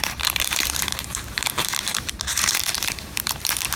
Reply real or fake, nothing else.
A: fake